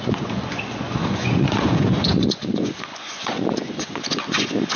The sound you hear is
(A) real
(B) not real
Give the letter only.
B